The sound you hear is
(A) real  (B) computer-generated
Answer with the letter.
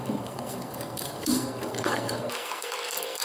B